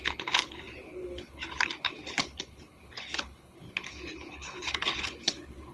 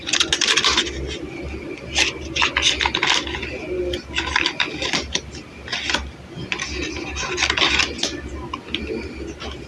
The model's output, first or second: first